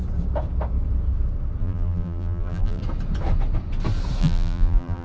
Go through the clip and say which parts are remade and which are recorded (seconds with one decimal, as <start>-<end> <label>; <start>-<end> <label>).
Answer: 0.0-1.6 recorded; 1.6-2.8 remade; 2.8-4.2 recorded; 4.2-5.0 remade